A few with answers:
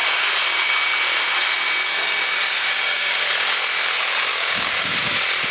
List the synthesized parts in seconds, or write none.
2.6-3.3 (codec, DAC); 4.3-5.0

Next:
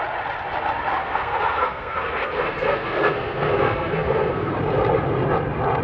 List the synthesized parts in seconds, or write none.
1.0-4.5 (codec, SNAC)

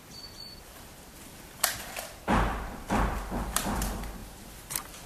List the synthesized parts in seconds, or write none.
0.0-4.2 (vocoder, BigVGAN v2)

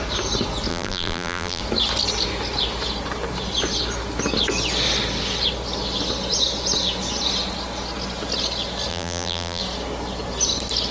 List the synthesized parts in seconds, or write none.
0.7-1.6 (vocoder, BigVGAN v2); 8.9-9.6

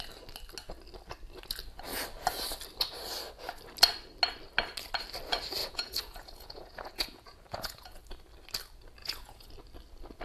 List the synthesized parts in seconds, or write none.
5.6-8.0 (vocoder, Vocos); 9.0-9.5

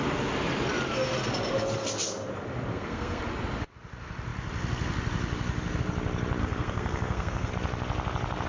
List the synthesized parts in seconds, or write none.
2.7-3.2 (codec, SNAC); 6.4-7.5